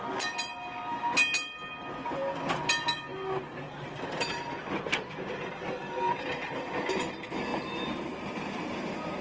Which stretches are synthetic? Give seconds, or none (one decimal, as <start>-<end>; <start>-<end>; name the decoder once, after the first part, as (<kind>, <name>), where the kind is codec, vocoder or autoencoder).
none